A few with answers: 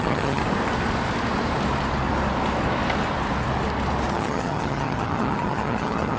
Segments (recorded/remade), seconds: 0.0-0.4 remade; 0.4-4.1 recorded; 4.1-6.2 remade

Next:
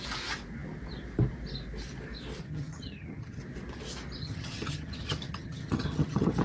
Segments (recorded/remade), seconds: 0.0-2.4 recorded; 2.4-3.4 remade; 3.4-4.2 recorded; 4.2-6.4 remade

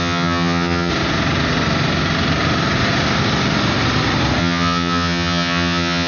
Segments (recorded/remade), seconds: 0.0-0.9 remade; 0.9-4.4 recorded; 4.4-6.1 remade